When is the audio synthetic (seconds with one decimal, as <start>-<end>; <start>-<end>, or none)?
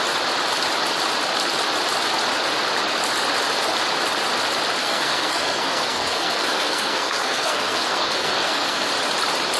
4.8-8.9